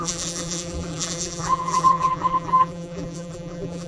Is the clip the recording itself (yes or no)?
no